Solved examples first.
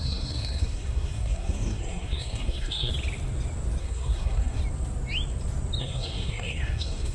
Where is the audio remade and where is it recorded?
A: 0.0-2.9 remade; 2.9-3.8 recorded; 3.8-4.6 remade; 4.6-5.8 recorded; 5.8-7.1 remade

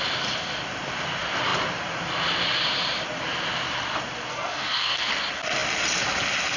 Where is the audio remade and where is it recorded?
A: 0.0-4.3 recorded; 4.3-5.1 remade; 5.1-6.6 recorded